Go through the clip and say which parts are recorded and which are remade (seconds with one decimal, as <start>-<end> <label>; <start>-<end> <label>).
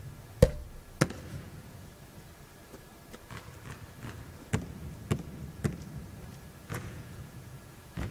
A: 0.0-1.3 recorded; 1.3-1.9 remade; 1.9-6.6 recorded; 6.6-8.1 remade